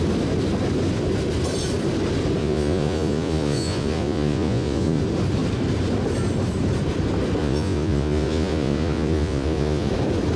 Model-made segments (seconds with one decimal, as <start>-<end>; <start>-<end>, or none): 2.4-5.0; 7.4-9.9